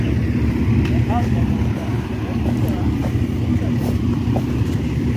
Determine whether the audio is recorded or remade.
recorded